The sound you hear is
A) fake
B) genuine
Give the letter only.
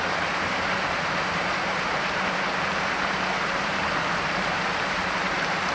A